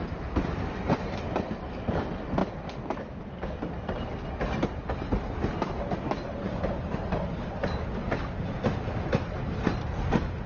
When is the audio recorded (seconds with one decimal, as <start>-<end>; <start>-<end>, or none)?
0.0-10.5